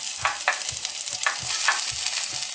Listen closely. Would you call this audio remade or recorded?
recorded